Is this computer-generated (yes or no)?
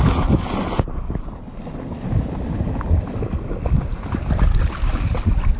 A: no